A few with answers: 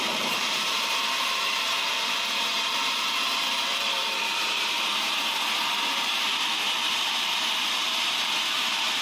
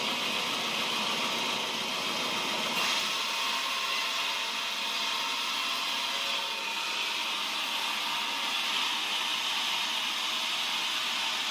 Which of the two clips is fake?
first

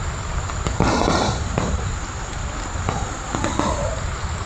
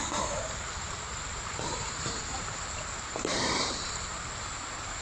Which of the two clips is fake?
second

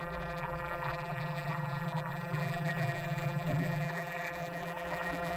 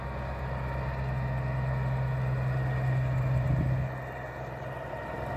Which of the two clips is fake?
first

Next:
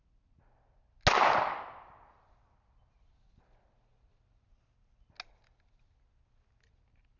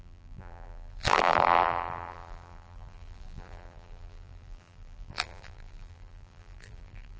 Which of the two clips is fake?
second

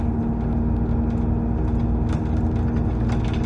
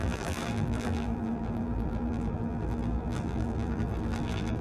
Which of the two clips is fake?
second